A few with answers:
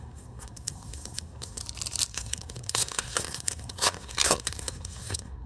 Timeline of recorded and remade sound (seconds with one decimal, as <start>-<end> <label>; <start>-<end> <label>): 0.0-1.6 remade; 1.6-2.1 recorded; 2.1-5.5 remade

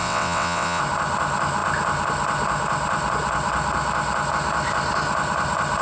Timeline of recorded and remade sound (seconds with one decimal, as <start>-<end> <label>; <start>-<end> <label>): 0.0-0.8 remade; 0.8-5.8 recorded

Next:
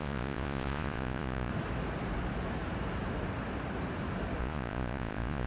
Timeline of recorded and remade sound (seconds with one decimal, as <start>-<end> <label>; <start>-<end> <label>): 0.0-1.5 remade; 1.5-4.4 recorded; 4.4-5.5 remade